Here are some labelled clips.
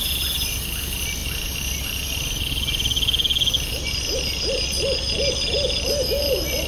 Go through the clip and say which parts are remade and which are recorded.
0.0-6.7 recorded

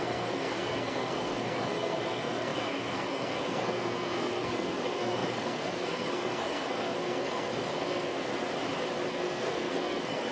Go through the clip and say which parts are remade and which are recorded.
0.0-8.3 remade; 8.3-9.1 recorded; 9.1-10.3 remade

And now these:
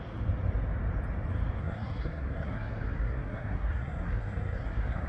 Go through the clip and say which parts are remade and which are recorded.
0.0-1.6 recorded; 1.6-5.1 remade

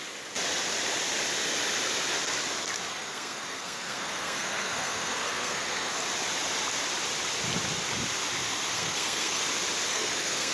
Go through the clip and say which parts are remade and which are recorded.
0.0-2.9 recorded; 2.9-5.9 remade; 5.9-8.7 recorded; 8.7-9.4 remade; 9.4-9.9 recorded; 9.9-10.5 remade

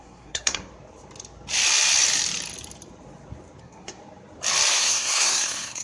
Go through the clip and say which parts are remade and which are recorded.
0.0-0.7 remade; 0.7-3.6 recorded; 3.6-4.0 remade; 4.0-4.7 recorded; 4.7-5.8 remade

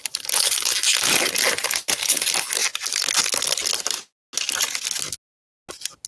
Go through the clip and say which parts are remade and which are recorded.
0.0-6.1 recorded